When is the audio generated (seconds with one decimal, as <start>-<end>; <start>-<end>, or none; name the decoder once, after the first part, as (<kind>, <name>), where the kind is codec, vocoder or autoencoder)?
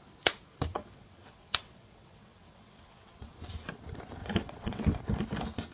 0.7-3.3 (vocoder, WaveNeXt); 4.2-4.8